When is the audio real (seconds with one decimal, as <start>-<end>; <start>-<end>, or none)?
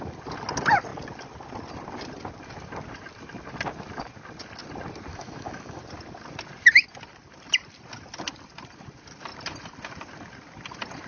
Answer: 0.0-5.1; 5.8-11.1